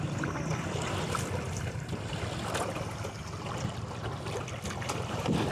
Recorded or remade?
recorded